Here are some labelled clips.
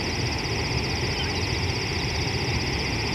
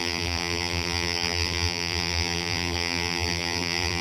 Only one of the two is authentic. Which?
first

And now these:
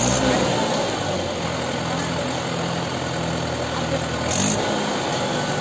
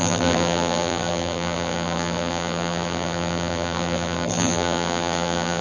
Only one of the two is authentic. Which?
first